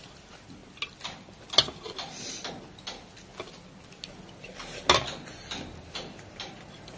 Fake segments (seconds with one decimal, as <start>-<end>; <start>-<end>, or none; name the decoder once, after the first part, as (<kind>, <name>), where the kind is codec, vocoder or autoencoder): none